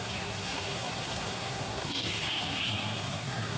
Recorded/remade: remade